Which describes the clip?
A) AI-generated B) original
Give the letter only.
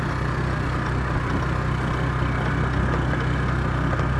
B